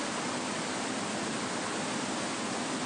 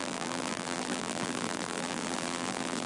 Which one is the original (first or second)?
first